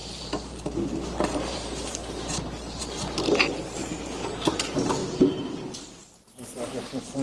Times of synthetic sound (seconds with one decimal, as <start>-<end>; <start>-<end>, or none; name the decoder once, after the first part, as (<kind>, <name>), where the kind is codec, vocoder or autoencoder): 0.0-5.0 (vocoder, BigVGAN v2); 6.4-7.2